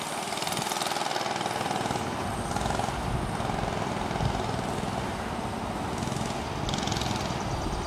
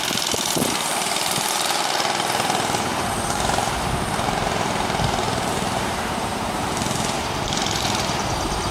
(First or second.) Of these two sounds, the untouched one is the first